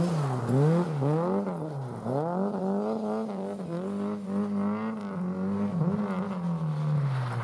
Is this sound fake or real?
real